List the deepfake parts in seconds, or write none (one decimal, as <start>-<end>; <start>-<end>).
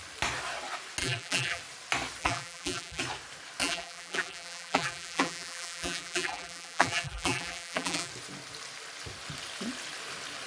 1.0-1.6; 2.2-3.0; 3.6-8.1